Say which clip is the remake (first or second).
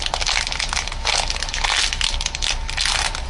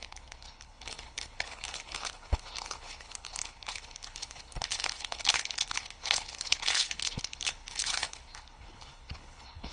second